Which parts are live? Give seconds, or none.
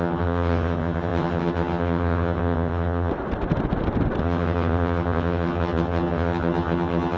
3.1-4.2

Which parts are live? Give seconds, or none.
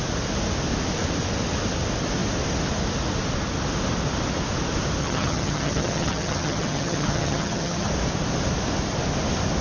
0.0-5.0; 7.9-9.6